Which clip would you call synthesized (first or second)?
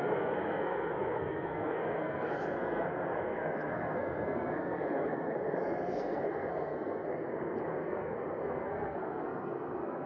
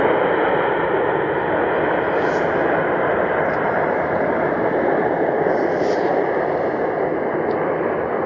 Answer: first